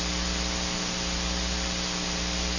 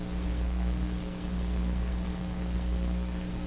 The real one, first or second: first